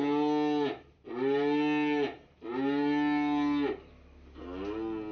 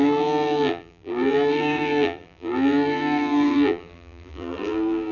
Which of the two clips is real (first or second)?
first